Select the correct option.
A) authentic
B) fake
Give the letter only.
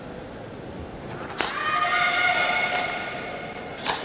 A